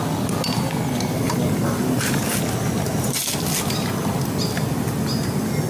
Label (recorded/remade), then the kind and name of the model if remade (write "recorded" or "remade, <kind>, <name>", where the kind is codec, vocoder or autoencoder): recorded